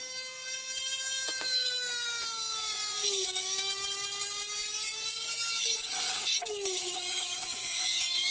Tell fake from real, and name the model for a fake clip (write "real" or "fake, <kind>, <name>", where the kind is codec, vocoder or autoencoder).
fake, codec, DAC